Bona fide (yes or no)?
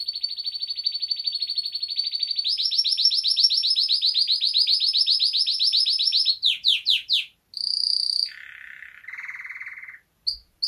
yes